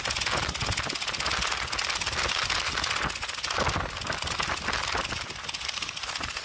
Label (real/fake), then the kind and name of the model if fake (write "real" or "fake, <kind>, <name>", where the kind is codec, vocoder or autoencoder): real